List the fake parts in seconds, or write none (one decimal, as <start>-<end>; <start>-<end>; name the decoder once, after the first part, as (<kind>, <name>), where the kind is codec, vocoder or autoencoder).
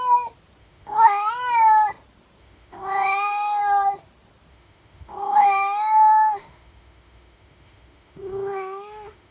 0.6-1.3 (autoencoder, DAC-VAE); 2.4-3.6; 4.5-9.3